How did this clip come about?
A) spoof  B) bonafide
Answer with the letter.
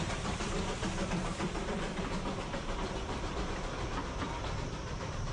A